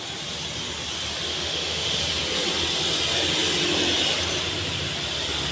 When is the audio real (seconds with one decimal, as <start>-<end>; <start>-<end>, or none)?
0.0-1.3; 2.0-5.5